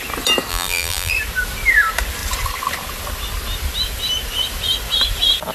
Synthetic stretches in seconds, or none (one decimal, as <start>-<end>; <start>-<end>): 0.5-1.1